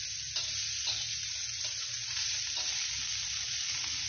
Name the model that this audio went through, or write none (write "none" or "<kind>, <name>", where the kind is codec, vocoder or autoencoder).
none